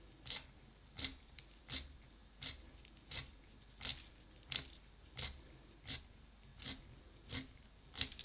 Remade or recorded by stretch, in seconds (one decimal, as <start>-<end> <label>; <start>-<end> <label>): 0.0-8.2 recorded